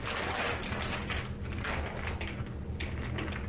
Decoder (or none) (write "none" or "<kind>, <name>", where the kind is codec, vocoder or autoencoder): none